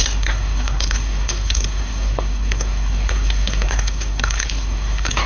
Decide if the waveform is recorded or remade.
remade